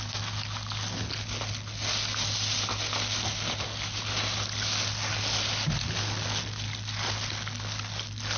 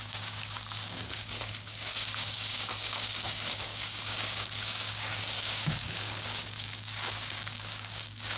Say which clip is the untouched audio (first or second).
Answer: first